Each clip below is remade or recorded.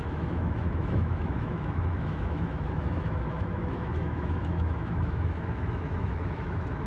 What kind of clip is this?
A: remade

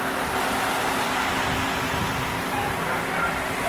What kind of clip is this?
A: recorded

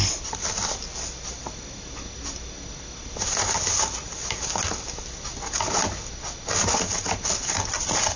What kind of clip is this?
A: recorded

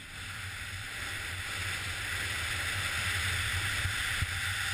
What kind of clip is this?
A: recorded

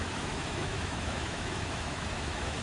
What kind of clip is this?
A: remade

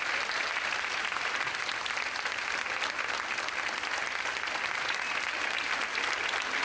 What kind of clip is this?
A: recorded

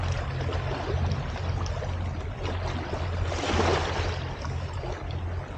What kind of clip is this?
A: recorded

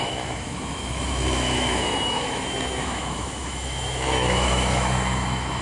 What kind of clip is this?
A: remade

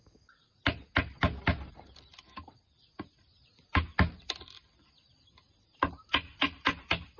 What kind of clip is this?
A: recorded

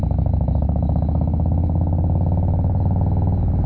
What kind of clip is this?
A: recorded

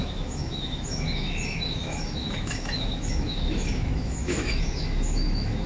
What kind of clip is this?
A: remade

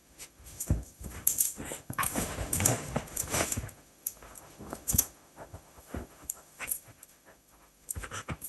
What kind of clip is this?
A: remade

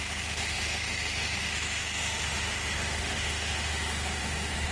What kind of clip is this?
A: remade